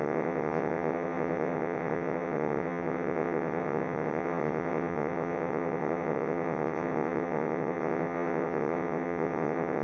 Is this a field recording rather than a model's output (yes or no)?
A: no